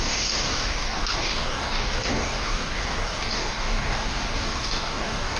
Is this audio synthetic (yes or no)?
yes